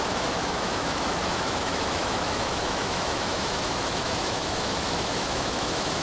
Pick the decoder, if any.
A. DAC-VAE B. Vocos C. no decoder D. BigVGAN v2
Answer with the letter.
A